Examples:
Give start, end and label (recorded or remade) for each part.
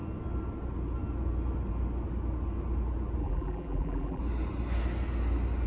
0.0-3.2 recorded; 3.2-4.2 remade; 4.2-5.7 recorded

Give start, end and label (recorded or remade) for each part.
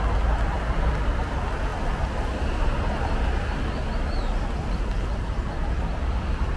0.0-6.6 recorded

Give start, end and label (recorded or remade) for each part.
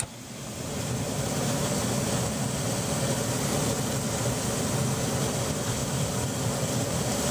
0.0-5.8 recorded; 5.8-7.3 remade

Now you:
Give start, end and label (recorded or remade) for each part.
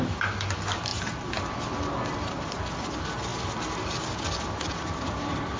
0.0-5.6 recorded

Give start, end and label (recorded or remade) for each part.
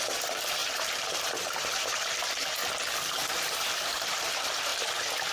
0.0-2.6 remade; 2.6-3.1 recorded; 3.1-5.3 remade